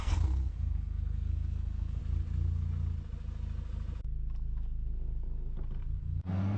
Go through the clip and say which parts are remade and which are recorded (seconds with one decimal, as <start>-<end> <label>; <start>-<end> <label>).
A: 0.0-2.0 remade; 2.0-6.0 recorded; 6.0-6.6 remade